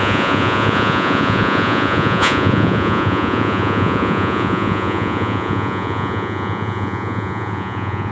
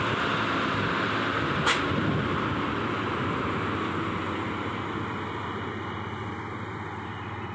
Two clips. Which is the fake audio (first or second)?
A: first